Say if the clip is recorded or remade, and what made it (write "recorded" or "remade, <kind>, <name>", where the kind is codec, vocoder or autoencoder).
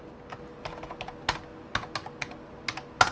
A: recorded